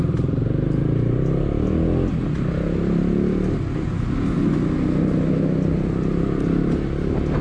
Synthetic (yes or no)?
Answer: no